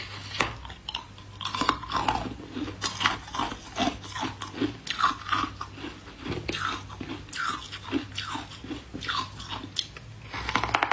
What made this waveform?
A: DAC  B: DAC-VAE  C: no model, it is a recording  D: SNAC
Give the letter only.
C